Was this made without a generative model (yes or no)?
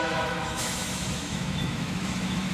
no